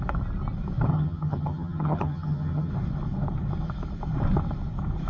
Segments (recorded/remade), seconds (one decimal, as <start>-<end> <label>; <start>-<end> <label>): 0.0-0.9 recorded; 0.9-2.7 remade; 2.7-5.1 recorded